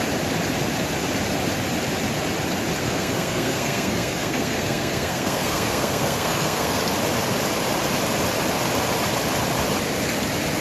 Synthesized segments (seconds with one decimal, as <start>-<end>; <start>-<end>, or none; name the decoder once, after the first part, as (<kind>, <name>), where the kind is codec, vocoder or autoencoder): 2.8-6.8 (codec, SNAC)